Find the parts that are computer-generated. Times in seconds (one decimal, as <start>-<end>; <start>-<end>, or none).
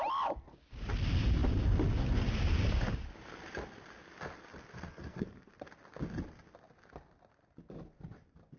4.9-5.5